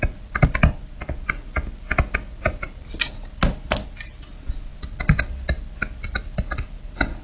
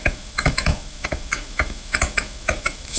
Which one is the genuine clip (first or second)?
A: first